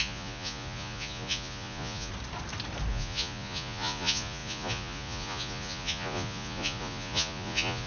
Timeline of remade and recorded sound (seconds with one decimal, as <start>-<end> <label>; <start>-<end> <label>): 0.0-2.1 remade; 2.1-2.9 recorded; 2.9-7.9 remade